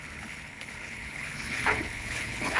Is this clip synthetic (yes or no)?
yes